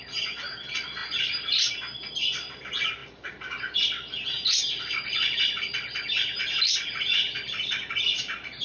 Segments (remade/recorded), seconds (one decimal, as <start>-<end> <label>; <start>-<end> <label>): 0.0-8.6 recorded